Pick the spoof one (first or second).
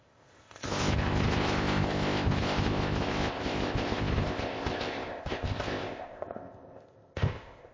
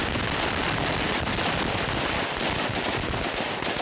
first